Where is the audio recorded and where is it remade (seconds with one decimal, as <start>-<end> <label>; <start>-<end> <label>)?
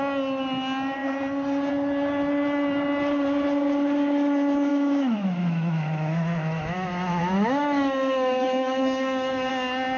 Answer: 0.0-4.7 recorded; 4.7-9.5 remade; 9.5-10.0 recorded